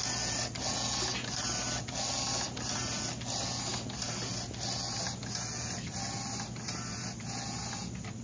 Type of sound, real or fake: real